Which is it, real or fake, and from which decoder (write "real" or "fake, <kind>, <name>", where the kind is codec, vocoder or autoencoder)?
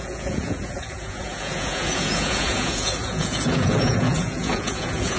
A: fake, vocoder, Vocos